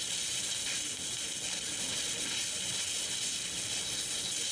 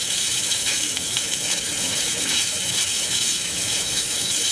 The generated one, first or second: second